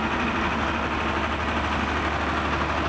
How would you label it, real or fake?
real